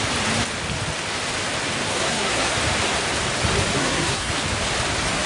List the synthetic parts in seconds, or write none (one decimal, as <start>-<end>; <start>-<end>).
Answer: 1.9-2.5; 3.8-4.3